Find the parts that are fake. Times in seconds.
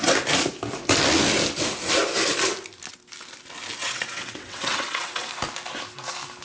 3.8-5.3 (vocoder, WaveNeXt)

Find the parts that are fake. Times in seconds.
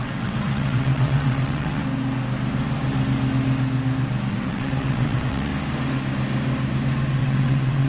0.0-1.8 (vocoder, WaveNeXt); 4.3-5.5; 7.2-7.9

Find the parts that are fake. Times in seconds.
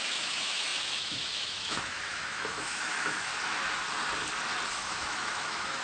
0.0-3.3 (autoencoder, DAC-VAE); 4.7-5.8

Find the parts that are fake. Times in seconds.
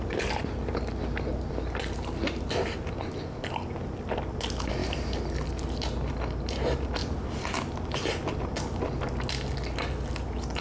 none